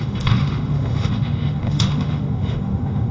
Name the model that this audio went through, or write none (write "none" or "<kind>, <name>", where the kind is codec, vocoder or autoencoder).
autoencoder, DAC-VAE